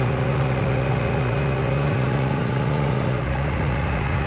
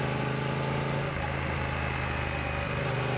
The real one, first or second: second